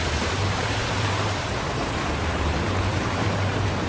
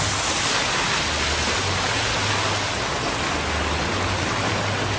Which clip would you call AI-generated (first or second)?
first